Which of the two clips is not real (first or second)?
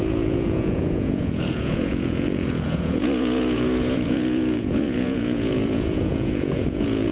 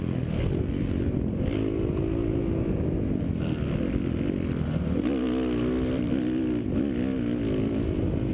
first